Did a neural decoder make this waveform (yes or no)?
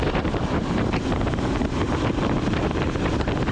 no